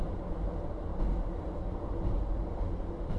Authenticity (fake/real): real